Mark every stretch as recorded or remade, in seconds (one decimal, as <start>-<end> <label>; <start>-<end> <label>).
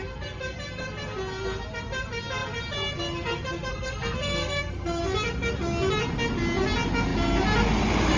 0.0-3.7 recorded; 3.7-5.0 remade; 5.0-8.2 recorded